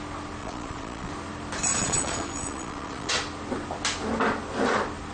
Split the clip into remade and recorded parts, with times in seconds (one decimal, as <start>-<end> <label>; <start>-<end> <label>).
0.0-0.4 recorded; 0.4-1.1 remade; 1.1-1.7 recorded; 1.7-3.1 remade; 3.1-5.1 recorded